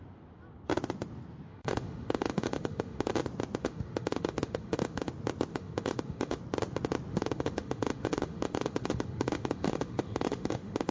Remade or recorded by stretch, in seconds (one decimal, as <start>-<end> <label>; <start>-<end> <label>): 0.0-1.5 recorded; 1.5-3.1 remade; 3.1-3.6 recorded; 3.6-5.1 remade; 5.1-5.5 recorded; 5.5-6.4 remade; 6.4-7.1 recorded; 7.1-10.9 remade